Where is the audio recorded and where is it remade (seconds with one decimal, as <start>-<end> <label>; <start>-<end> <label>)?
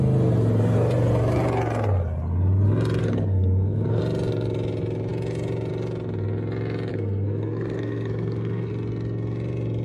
0.0-3.0 recorded; 3.0-4.0 remade; 4.0-6.9 recorded; 6.9-8.7 remade; 8.7-9.8 recorded